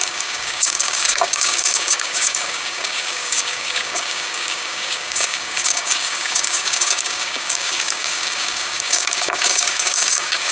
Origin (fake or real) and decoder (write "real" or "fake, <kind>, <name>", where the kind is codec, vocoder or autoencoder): fake, codec, DAC